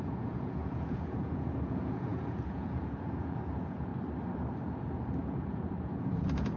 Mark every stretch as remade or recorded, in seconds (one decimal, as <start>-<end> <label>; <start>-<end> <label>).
0.0-3.9 remade; 3.9-4.8 recorded; 4.8-6.6 remade